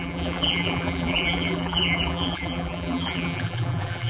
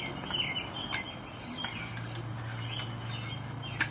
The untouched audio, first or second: second